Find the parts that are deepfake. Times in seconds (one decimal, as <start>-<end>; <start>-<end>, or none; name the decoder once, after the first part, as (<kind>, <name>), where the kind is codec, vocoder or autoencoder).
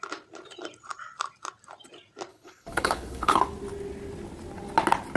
2.3-3.4 (codec, HILCodec)